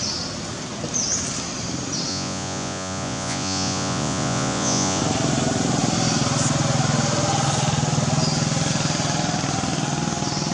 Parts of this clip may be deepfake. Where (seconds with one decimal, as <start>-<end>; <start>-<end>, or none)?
2.1-5.0

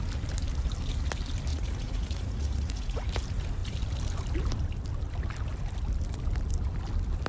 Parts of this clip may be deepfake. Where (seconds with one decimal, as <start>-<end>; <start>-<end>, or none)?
1.5-3.1

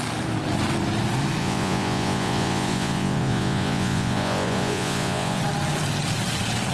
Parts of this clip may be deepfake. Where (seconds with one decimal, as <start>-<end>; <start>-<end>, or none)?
1.4-5.4

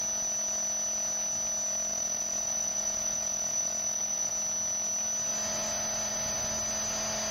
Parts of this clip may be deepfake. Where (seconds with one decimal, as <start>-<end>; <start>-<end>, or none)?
1.9-4.3

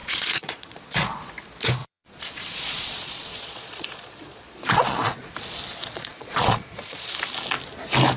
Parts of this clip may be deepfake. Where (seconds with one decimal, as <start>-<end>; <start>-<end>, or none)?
0.0-1.3; 1.8-5.3; 5.7-7.1